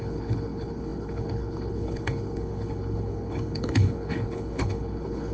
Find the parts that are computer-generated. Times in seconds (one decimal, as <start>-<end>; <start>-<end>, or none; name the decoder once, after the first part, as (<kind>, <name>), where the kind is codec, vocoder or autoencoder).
0.0-5.3 (codec, HILCodec)